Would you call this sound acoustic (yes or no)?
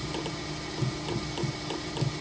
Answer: yes